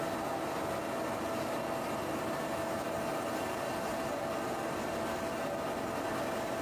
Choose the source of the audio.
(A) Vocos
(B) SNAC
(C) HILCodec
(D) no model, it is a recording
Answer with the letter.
D